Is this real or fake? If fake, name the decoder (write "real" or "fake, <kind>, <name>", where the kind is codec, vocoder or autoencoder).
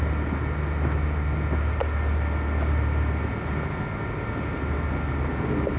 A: real